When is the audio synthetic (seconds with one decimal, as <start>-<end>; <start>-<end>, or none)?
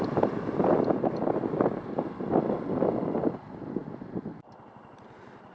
none